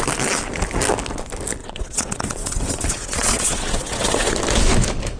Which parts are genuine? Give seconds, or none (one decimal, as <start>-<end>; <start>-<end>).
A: 0.0-1.6; 4.3-5.2